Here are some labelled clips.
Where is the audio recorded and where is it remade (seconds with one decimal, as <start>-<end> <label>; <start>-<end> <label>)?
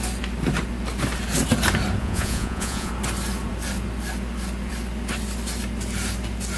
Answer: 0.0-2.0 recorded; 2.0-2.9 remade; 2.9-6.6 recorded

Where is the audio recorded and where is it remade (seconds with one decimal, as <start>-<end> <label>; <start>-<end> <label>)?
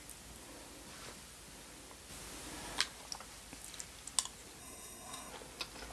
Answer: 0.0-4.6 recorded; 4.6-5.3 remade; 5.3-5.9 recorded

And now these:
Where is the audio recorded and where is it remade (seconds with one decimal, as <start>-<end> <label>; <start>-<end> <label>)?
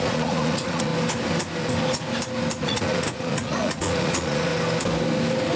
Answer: 0.0-0.9 remade; 0.9-2.6 recorded; 2.6-4.5 remade; 4.5-5.6 recorded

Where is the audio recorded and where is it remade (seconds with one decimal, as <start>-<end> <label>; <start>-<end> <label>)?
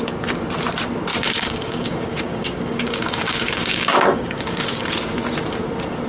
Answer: 0.0-1.1 recorded; 1.1-4.8 remade; 4.8-6.1 recorded